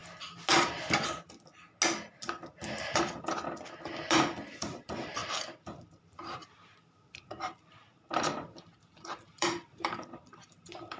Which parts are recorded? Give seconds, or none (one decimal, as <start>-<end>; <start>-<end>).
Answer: 0.0-4.7